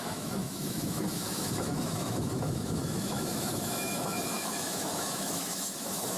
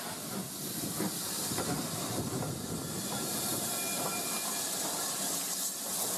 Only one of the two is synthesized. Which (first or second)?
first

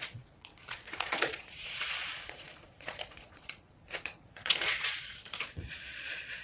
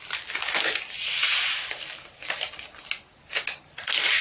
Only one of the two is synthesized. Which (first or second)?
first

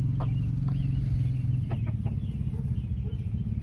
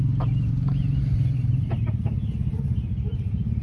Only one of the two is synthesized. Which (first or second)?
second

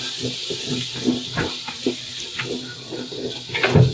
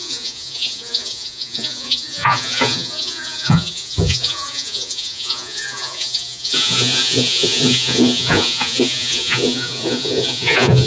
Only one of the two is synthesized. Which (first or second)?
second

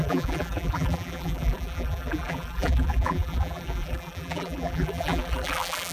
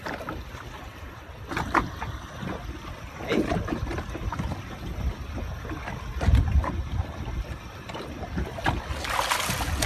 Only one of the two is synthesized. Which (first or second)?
first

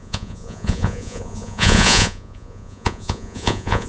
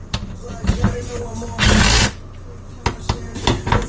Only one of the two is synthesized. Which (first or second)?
first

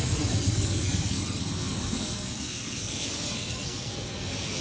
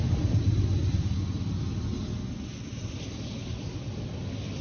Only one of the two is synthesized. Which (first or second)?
first